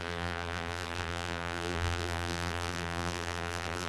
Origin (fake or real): fake